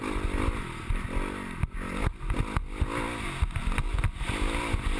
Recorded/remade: recorded